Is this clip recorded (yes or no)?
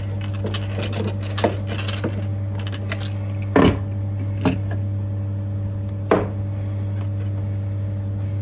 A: yes